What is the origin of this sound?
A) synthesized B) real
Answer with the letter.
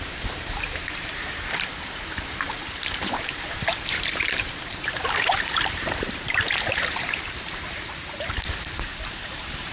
A